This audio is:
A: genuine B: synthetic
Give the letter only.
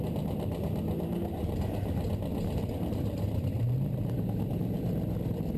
B